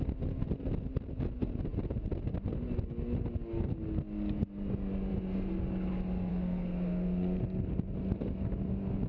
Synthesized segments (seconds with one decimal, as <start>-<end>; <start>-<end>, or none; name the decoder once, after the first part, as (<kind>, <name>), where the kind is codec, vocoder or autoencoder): 6.3-7.4 (codec, SNAC)